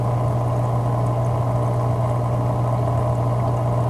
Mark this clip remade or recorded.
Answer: recorded